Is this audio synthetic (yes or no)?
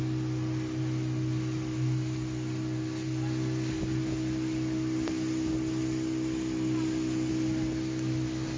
no